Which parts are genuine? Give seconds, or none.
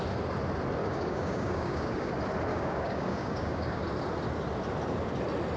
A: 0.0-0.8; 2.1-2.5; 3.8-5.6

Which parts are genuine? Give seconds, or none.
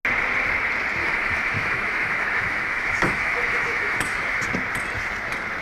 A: 0.0-1.0; 4.4-5.6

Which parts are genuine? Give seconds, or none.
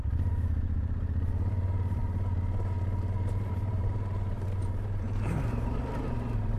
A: 2.0-3.3